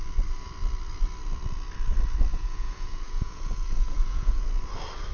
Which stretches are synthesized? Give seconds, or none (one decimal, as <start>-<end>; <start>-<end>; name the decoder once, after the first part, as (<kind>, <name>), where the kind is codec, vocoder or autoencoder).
2.3-4.5 (vocoder, Vocos)